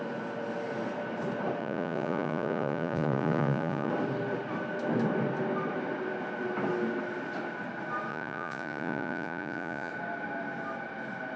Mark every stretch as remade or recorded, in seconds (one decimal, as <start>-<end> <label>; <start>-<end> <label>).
0.0-1.6 recorded; 1.6-3.9 remade; 3.9-8.1 recorded; 8.1-9.9 remade; 9.9-11.4 recorded